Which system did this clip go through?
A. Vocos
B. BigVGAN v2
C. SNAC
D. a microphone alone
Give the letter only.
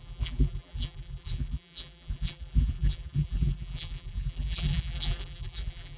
B